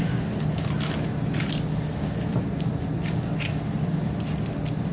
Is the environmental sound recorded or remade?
recorded